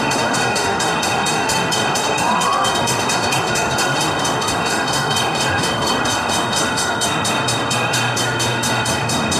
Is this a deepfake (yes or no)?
yes